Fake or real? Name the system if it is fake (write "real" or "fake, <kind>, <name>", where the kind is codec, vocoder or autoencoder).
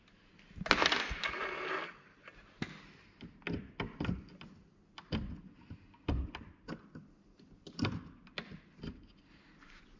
real